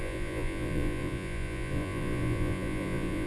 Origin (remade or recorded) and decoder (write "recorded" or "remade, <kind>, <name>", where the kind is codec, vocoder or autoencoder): remade, vocoder, Vocos